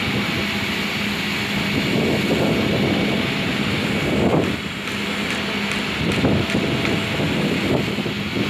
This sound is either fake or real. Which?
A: real